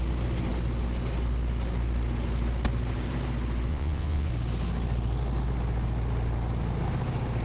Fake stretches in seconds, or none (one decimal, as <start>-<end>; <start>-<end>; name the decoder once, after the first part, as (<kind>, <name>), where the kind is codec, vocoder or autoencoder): 3.7-4.3 (vocoder, Vocos)